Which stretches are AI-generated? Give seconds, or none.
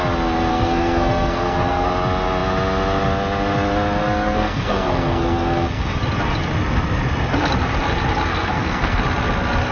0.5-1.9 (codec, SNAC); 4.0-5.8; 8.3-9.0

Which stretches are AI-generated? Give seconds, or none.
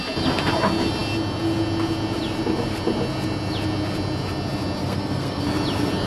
4.8-5.4 (codec, SNAC)